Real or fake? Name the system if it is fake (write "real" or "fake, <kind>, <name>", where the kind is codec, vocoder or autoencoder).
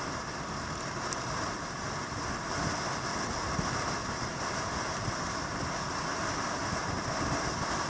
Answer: real